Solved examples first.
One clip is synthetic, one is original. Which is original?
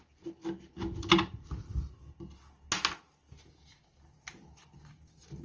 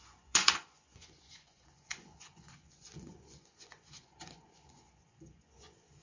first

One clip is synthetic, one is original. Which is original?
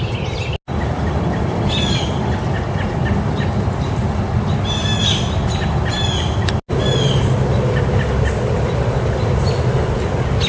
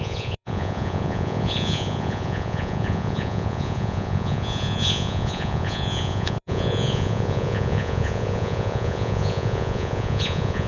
first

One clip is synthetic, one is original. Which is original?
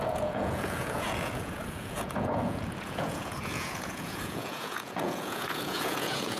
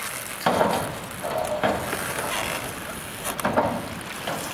second